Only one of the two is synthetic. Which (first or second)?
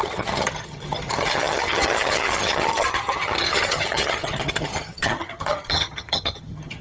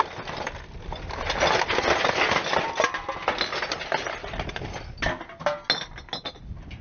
first